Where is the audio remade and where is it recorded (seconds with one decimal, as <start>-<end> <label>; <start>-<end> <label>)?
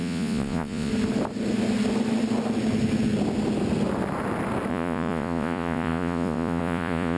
0.0-0.9 remade; 0.9-4.7 recorded; 4.7-7.2 remade